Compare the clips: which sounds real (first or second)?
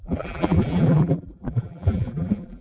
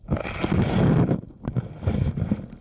second